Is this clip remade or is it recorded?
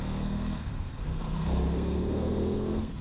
remade